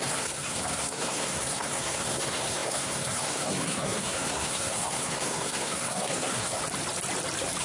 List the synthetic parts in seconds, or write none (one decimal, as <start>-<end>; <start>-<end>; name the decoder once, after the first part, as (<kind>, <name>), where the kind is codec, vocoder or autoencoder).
0.0-6.6 (codec, SNAC)